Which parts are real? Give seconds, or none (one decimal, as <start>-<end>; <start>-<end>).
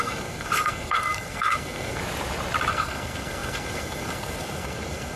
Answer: 2.0-2.7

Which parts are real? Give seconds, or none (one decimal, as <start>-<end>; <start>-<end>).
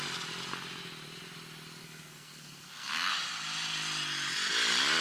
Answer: 0.0-1.8; 3.1-5.0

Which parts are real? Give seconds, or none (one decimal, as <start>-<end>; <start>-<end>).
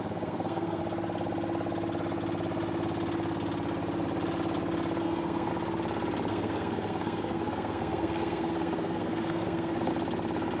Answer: 0.8-5.0; 5.5-6.3; 9.9-10.6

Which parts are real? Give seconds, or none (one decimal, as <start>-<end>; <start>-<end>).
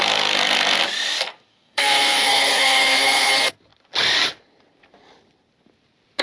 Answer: 0.0-1.5; 3.3-6.2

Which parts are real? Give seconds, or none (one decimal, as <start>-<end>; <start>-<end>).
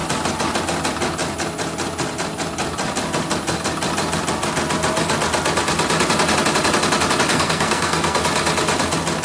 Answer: 0.0-7.3; 8.2-9.2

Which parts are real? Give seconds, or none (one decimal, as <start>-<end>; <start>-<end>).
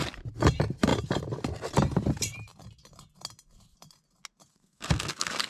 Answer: 0.0-4.5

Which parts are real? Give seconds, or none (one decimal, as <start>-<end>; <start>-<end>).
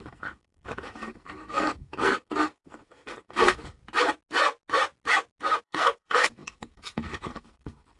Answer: 3.8-5.6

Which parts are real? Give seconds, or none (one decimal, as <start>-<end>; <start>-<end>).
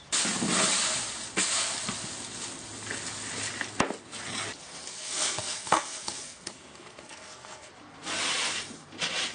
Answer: 0.0-4.9; 7.7-9.3